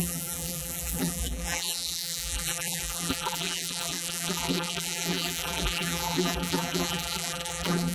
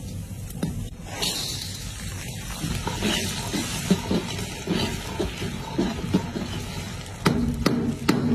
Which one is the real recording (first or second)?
second